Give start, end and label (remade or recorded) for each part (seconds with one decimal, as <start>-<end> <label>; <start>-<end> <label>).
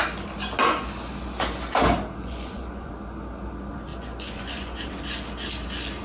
0.0-2.2 recorded; 2.2-2.9 remade; 2.9-3.9 recorded; 3.9-4.9 remade; 4.9-6.0 recorded